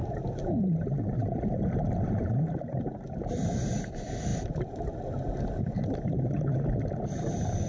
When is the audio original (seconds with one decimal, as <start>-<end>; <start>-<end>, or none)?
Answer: 1.4-4.3; 5.0-7.7